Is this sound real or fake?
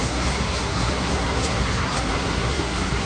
fake